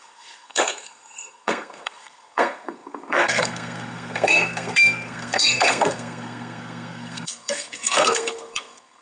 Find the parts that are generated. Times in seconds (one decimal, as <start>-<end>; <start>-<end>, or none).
0.0-9.0